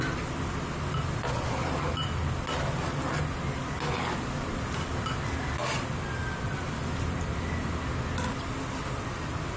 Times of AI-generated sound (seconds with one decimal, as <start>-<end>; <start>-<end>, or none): none